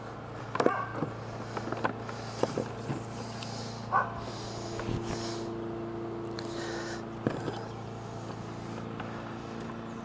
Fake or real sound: real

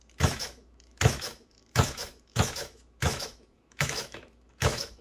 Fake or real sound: fake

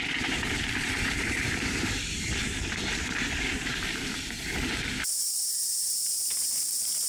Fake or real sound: fake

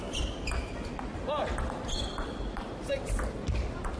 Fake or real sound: real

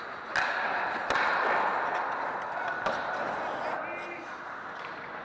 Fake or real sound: real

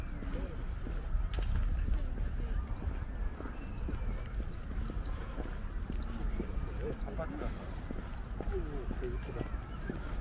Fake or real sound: real